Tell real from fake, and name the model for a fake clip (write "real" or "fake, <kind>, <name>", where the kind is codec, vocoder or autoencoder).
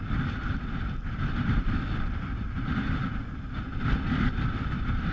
real